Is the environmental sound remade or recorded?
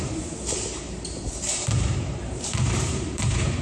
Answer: remade